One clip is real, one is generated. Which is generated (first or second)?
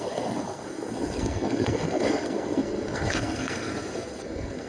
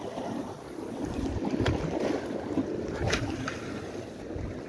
first